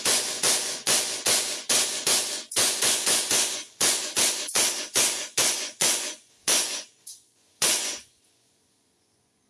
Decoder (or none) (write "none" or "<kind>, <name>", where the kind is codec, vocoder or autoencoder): vocoder, Vocos